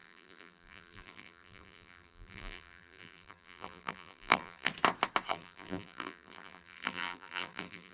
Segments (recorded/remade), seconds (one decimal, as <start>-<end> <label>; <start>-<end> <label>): 0.0-4.7 remade; 4.7-5.3 recorded; 5.3-7.9 remade

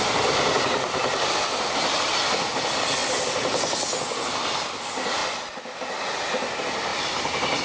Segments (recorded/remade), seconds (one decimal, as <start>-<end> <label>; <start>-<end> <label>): 0.0-6.9 recorded; 6.9-7.6 remade

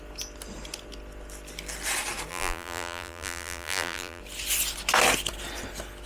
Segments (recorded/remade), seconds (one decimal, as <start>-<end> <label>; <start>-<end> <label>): 0.0-2.3 recorded; 2.3-4.2 remade; 4.2-6.1 recorded

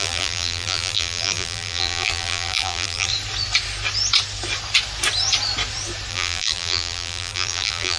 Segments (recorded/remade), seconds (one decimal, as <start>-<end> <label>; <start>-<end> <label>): 0.0-3.1 remade; 3.1-6.1 recorded; 6.1-8.0 remade